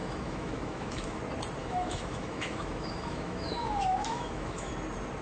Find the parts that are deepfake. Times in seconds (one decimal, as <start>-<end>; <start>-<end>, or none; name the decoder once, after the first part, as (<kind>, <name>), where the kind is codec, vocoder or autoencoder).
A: 0.0-1.2 (autoencoder, DAC-VAE); 1.6-4.7

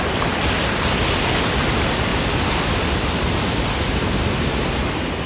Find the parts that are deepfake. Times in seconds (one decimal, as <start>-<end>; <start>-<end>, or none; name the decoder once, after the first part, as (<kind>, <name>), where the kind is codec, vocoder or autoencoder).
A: none

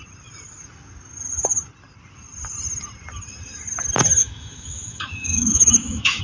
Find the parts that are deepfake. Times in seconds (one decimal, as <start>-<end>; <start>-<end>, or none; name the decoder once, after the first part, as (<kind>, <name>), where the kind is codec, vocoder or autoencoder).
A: 4.2-6.2 (autoencoder, DAC-VAE)

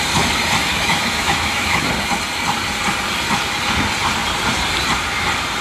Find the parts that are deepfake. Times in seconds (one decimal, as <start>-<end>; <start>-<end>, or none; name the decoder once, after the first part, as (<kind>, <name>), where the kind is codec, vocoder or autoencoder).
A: 0.7-1.9 (autoencoder, DAC-VAE)

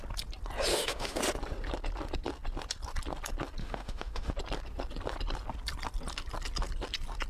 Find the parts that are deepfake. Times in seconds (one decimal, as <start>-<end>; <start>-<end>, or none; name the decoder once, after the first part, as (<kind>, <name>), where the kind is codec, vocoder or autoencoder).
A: 0.7-1.2 (autoencoder, DAC-VAE); 3.6-4.3